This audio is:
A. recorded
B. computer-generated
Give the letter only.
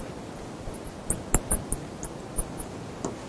A